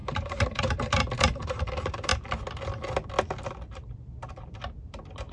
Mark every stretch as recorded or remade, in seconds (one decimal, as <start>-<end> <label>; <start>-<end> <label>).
0.0-2.1 remade; 2.1-5.3 recorded